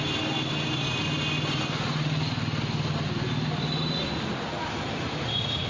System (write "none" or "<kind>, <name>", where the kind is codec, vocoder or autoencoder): none